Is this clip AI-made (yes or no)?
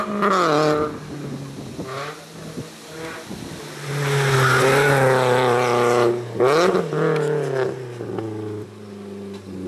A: no